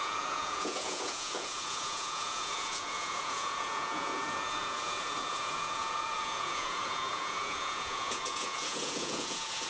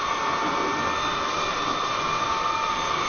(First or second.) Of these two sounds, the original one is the second